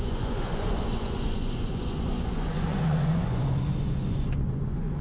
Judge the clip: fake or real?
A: fake